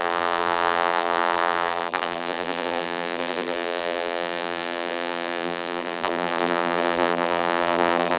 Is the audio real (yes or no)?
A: no